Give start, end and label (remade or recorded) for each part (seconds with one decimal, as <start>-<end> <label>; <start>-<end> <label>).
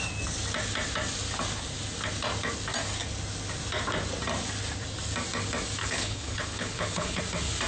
0.0-5.8 recorded; 5.8-7.2 remade; 7.2-7.7 recorded